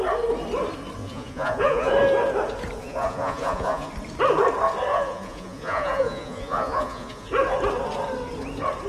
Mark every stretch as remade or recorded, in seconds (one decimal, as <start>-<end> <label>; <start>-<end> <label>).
0.0-1.0 recorded; 1.0-1.9 remade; 1.9-2.8 recorded; 2.8-3.9 remade; 3.9-4.9 recorded; 4.9-7.3 remade; 7.3-8.9 recorded